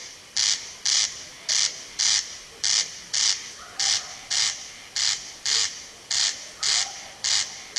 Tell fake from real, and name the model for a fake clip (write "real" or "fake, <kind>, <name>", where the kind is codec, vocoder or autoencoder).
fake, vocoder, BigVGAN v2